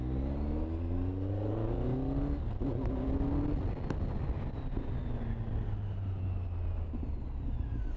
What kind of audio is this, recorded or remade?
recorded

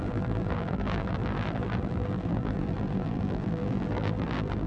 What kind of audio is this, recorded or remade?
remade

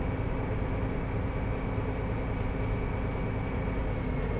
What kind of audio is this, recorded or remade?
recorded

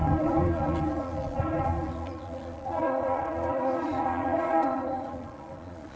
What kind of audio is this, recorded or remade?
remade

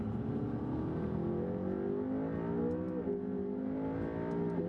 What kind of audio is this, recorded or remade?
recorded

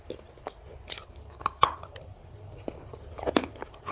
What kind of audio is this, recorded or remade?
recorded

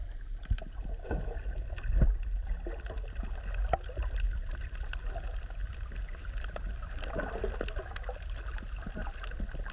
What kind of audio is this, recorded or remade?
recorded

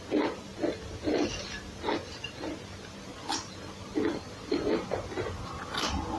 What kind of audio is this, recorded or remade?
recorded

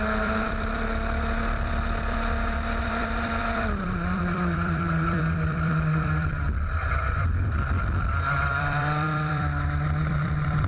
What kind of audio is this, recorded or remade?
remade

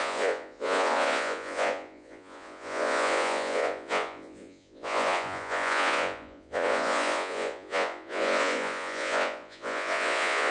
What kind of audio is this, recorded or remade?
remade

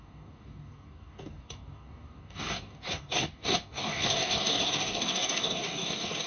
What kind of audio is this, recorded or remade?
remade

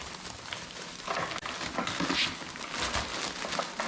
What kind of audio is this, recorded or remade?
recorded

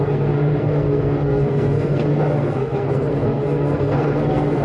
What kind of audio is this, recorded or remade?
remade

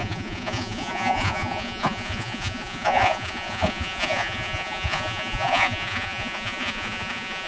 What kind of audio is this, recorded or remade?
remade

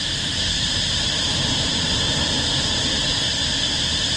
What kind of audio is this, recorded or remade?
recorded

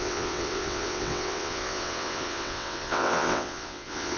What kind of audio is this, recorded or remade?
remade